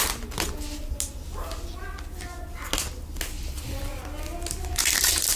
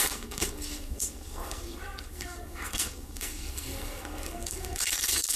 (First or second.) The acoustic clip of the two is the first